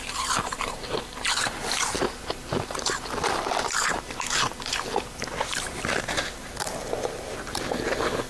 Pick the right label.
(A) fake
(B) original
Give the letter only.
A